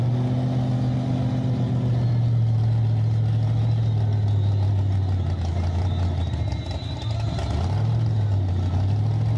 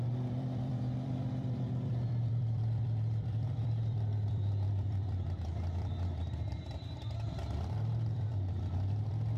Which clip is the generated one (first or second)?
second